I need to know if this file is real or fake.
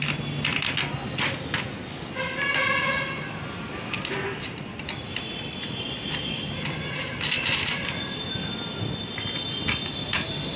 real